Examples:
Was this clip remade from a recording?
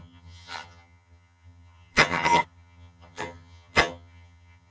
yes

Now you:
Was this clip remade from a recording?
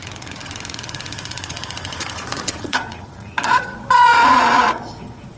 yes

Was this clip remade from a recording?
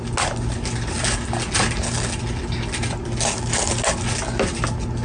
no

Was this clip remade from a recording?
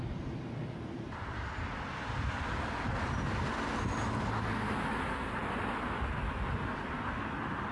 no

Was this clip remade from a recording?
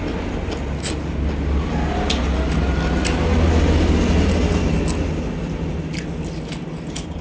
no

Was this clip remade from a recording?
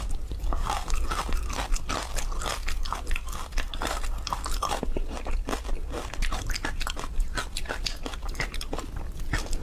no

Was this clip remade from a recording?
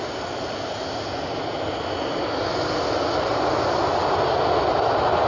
no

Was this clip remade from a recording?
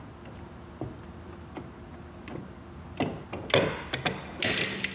no